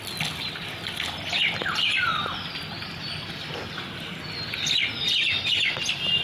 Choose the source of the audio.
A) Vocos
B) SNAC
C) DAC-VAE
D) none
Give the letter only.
D